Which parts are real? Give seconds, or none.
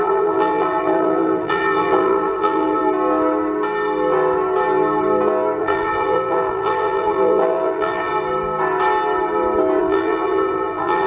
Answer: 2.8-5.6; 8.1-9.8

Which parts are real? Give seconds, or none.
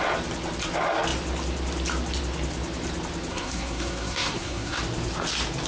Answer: 0.0-3.3; 4.8-5.7